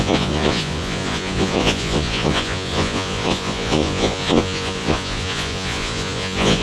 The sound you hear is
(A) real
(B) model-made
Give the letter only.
B